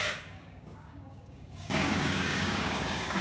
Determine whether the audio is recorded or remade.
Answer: remade